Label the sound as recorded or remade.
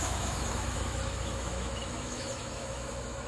remade